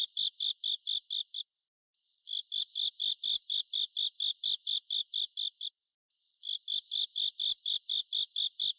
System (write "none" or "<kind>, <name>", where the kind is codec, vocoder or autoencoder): none